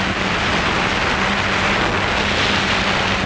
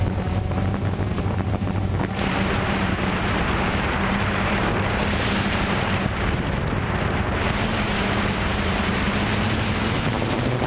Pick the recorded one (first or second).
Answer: first